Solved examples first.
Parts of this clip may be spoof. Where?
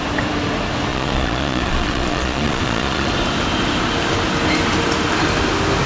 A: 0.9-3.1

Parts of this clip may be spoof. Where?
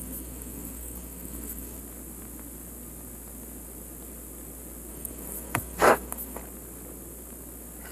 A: 0.0-1.8; 4.9-6.4